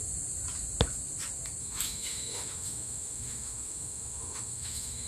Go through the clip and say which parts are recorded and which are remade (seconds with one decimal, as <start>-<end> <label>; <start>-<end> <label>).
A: 0.0-1.6 recorded; 1.6-5.1 remade